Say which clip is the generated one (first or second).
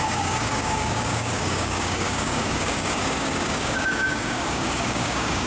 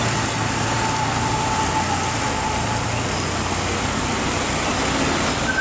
first